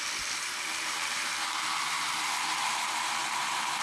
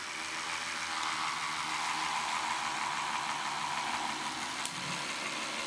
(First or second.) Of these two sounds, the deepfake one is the first